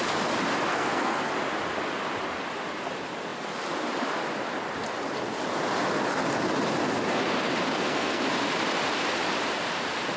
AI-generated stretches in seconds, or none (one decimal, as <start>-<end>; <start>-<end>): 0.7-1.3; 7.7-8.2